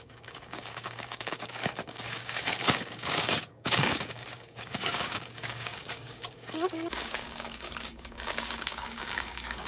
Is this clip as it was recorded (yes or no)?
no